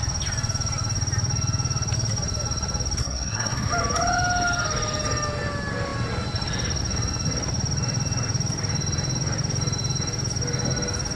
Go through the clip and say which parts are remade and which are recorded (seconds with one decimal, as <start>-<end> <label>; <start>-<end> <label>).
0.0-3.0 recorded; 3.0-3.7 remade; 3.7-11.2 recorded